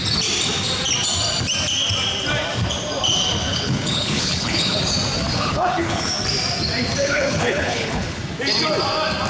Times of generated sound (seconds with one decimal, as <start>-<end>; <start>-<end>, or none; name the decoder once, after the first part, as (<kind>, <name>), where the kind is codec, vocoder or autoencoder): 3.5-4.8 (codec, HILCodec); 5.3-6.1; 7.0-8.2